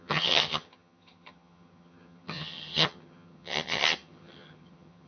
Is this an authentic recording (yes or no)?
no